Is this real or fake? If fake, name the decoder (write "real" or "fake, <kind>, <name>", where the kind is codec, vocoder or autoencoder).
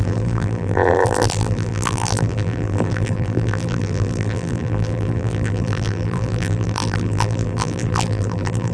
fake, vocoder, BigVGAN v2